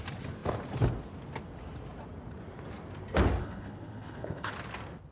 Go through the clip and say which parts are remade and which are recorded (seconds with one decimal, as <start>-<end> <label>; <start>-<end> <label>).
0.0-3.4 recorded; 3.4-4.5 remade; 4.5-5.1 recorded